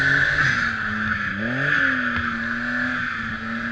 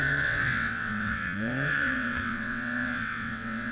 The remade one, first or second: second